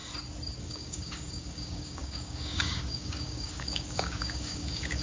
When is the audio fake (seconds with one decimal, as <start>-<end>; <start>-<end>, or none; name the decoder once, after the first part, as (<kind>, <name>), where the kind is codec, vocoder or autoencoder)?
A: 0.6-5.0 (codec, DAC)